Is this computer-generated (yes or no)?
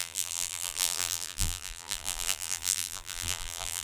yes